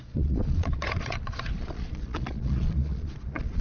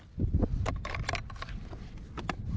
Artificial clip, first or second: first